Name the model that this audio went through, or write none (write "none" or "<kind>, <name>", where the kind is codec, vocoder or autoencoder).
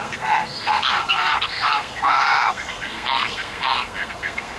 codec, SNAC